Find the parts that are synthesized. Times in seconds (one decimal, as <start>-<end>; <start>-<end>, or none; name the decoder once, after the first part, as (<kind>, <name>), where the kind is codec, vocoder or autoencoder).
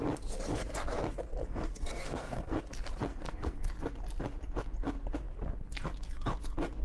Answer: 1.4-2.6 (codec, SNAC); 3.1-3.7